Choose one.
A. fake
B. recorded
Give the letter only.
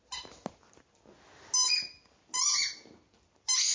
B